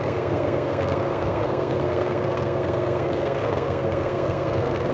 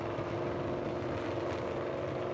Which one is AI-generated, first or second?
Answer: first